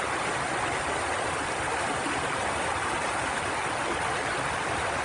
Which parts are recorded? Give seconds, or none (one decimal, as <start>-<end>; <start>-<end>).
0.0-5.0